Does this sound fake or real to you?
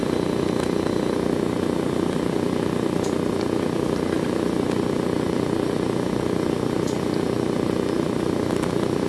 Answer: real